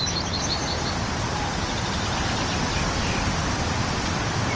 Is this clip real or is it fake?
real